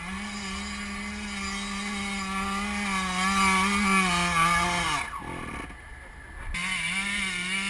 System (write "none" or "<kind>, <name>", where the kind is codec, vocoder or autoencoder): none